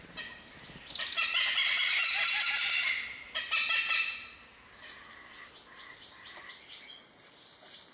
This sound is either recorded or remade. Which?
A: recorded